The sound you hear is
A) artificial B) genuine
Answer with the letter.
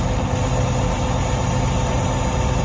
B